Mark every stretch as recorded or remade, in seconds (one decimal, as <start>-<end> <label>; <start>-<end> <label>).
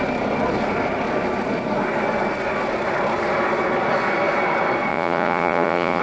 0.0-4.9 recorded; 4.9-6.0 remade